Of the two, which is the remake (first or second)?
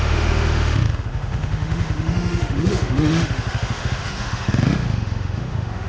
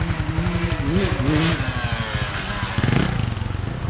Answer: first